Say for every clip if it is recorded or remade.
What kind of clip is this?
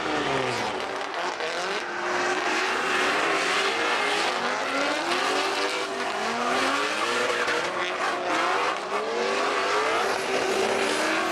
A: recorded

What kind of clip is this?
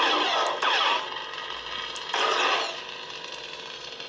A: recorded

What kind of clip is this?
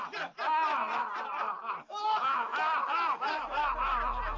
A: recorded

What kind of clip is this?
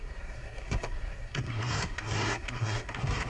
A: remade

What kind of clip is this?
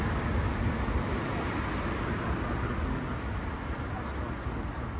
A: recorded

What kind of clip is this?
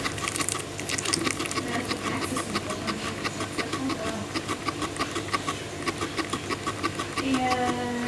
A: recorded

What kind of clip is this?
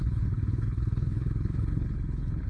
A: remade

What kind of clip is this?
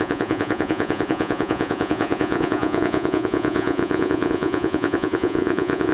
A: remade